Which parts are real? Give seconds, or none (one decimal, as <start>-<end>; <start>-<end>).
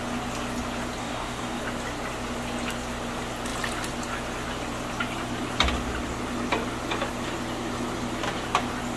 0.0-1.0; 1.6-9.0